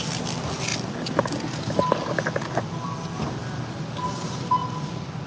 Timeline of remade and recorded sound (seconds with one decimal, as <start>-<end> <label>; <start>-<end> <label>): 0.0-5.3 recorded